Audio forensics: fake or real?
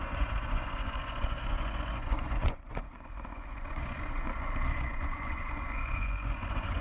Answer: fake